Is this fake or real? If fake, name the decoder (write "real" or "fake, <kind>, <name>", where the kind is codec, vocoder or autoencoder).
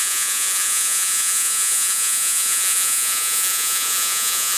fake, vocoder, Vocos